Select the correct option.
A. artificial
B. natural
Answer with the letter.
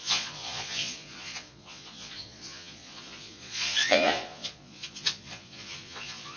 A